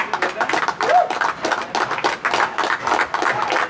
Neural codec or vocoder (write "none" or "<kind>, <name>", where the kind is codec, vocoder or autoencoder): none